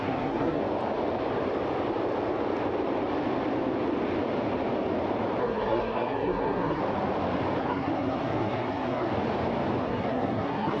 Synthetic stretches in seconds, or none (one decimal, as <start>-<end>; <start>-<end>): 0.0-0.6; 5.4-6.8; 7.6-9.1; 9.8-10.8